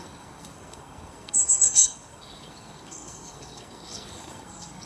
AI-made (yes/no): yes